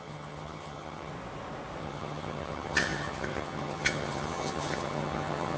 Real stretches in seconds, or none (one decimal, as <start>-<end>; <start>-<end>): 1.1-1.8